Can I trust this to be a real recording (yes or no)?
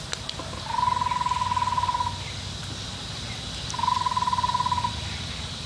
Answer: yes